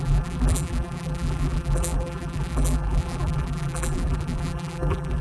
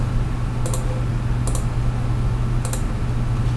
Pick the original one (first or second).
second